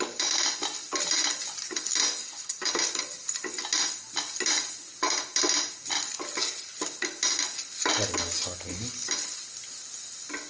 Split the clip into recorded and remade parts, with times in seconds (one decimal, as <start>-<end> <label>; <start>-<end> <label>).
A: 0.0-2.2 recorded; 2.2-2.7 remade; 2.7-10.5 recorded